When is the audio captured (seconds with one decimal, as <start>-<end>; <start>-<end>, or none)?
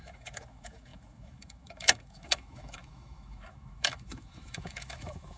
none